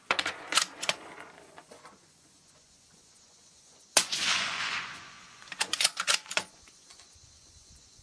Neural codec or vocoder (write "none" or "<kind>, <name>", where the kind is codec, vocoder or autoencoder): vocoder, Vocos